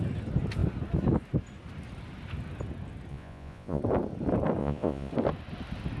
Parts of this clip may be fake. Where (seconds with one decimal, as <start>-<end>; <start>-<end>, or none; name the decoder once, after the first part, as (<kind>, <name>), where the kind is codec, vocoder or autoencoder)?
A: 3.1-3.8 (vocoder, Vocos); 4.6-5.1